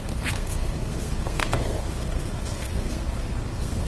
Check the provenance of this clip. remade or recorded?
remade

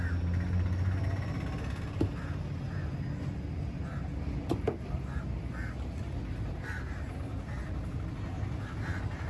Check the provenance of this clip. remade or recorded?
recorded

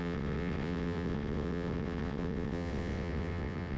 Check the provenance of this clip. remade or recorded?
remade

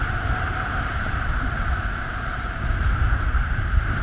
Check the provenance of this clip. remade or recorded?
remade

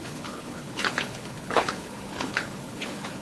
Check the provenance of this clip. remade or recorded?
remade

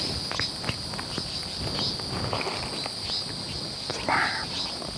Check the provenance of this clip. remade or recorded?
recorded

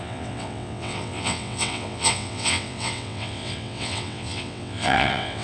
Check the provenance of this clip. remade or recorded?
remade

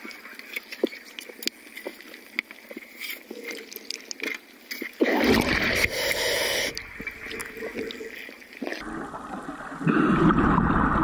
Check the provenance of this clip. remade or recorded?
recorded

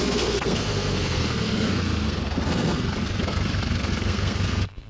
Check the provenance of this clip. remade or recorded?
remade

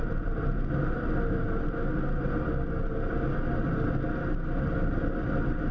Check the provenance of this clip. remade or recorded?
recorded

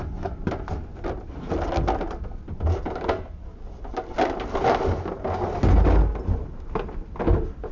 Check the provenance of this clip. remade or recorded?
recorded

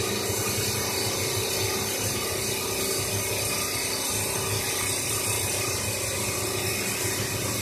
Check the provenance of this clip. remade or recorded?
recorded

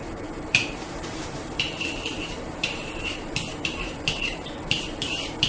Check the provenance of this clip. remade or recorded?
remade